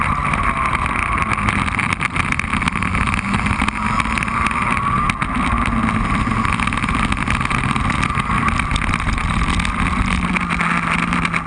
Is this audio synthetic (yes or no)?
no